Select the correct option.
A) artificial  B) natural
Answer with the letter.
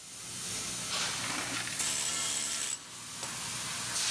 B